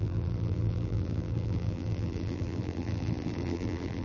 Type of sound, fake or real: fake